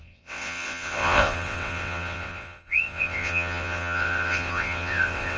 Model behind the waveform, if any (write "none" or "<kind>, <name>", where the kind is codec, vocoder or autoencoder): vocoder, WaveNeXt